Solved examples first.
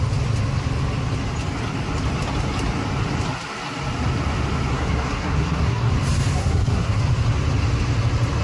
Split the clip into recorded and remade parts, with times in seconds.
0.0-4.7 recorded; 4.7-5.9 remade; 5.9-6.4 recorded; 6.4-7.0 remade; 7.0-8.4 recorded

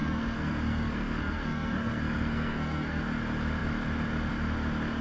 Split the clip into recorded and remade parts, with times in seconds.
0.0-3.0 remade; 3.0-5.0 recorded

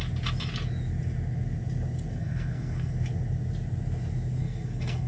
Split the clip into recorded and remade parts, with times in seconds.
0.0-2.1 recorded; 2.1-2.9 remade; 2.9-4.4 recorded; 4.4-5.1 remade

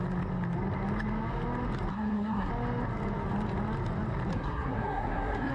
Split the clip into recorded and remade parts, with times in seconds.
0.0-1.9 recorded; 1.9-2.5 remade; 2.5-4.3 recorded; 4.3-5.5 remade

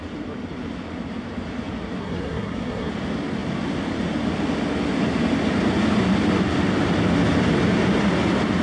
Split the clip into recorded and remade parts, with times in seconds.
0.0-2.0 recorded; 2.0-2.9 remade; 2.9-8.6 recorded

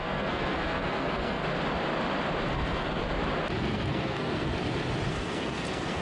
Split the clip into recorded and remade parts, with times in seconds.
0.0-1.4 remade; 1.4-2.5 recorded; 2.5-3.0 remade; 3.0-3.6 recorded; 3.6-4.5 remade; 4.5-5.1 recorded; 5.1-6.0 remade